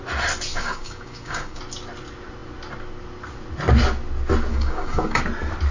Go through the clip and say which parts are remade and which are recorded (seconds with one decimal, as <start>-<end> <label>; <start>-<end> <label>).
0.0-0.5 recorded; 0.5-1.6 remade; 1.6-4.5 recorded; 4.5-5.2 remade; 5.2-5.7 recorded